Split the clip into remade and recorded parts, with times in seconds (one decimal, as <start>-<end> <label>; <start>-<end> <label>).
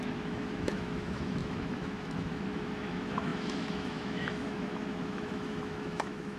0.0-6.4 remade